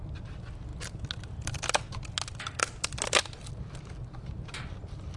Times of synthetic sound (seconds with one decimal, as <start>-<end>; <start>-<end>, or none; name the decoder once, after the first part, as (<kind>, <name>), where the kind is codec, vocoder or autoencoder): none